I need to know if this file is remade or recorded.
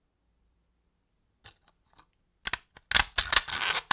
recorded